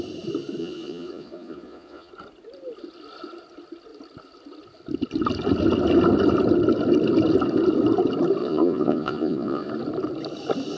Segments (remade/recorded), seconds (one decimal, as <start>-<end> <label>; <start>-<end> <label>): 0.0-0.6 recorded; 0.6-2.1 remade; 2.1-8.4 recorded; 8.4-9.7 remade; 9.7-10.8 recorded